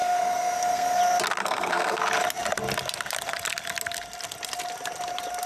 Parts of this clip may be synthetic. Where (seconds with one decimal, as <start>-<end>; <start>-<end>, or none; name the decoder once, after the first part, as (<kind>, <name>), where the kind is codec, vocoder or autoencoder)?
0.0-1.0 (codec, SNAC); 1.4-2.0